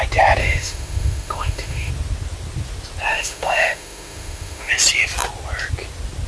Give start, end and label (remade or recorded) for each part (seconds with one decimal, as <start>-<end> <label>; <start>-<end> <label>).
0.0-0.4 recorded; 0.4-1.9 remade; 1.9-3.1 recorded; 3.1-4.7 remade; 4.7-6.3 recorded